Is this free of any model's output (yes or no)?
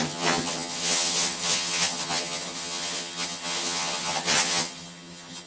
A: no